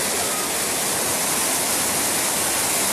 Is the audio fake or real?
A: real